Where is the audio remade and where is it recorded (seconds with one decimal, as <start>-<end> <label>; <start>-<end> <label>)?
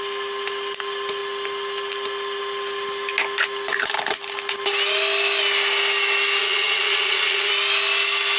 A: 0.0-6.4 recorded; 6.4-7.5 remade; 7.5-8.4 recorded